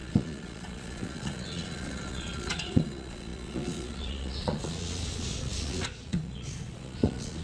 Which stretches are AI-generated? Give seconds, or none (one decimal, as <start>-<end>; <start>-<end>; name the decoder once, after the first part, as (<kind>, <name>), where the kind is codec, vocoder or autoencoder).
0.0-7.4 (vocoder, Vocos)